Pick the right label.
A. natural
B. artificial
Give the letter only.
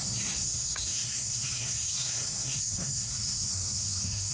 B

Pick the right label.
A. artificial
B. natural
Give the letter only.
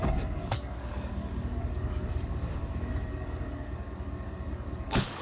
A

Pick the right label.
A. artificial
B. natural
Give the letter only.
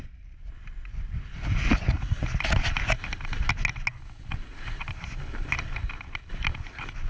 B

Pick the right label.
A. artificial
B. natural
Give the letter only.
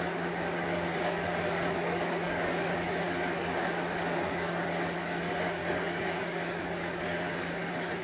A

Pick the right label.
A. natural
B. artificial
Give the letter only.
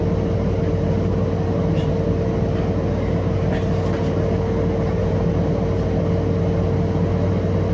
A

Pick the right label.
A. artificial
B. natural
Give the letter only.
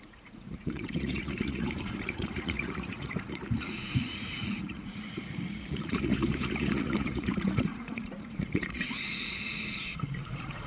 A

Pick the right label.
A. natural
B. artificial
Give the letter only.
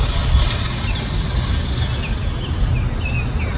A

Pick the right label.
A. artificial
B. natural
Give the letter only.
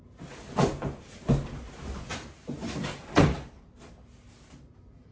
B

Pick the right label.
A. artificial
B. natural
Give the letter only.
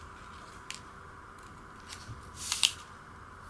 B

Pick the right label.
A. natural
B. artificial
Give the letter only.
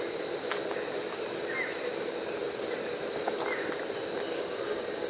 A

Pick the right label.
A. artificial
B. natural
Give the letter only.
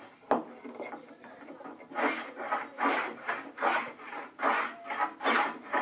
B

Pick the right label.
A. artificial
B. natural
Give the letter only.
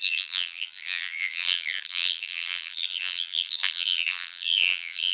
A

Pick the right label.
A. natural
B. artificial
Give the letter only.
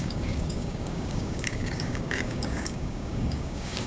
B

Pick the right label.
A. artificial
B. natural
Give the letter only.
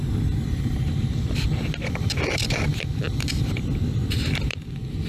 A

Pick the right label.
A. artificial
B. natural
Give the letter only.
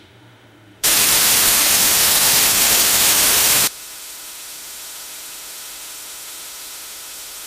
A